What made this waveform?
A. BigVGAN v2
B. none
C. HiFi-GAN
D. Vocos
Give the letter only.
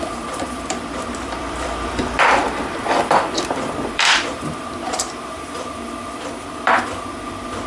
A